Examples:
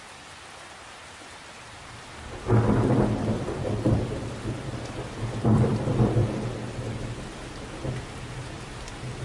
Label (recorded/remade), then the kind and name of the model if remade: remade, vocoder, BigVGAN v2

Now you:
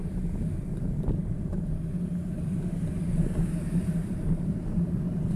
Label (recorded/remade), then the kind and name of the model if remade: remade, vocoder, BigVGAN v2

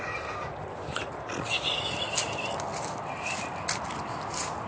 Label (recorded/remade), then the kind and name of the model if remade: recorded